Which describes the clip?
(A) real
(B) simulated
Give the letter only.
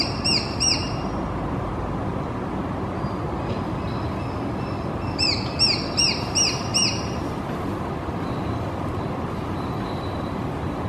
A